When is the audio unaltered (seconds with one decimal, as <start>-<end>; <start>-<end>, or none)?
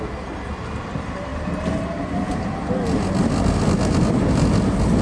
0.0-5.0